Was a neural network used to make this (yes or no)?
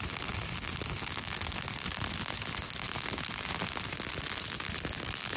no